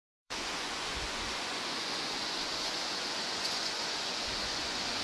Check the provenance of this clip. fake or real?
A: fake